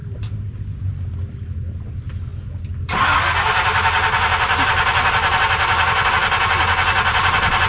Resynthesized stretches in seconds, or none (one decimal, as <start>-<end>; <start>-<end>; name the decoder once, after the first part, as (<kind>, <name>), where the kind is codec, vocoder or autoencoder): none